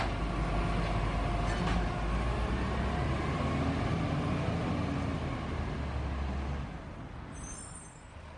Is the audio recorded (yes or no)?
yes